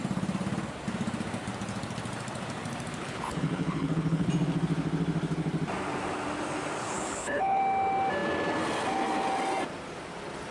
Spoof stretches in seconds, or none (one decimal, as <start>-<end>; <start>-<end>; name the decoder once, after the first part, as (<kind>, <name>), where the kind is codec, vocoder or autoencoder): 3.0-4.3 (codec, HILCodec); 6.8-7.6